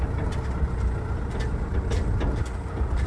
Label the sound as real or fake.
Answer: real